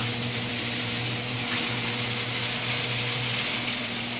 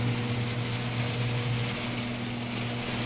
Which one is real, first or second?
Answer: second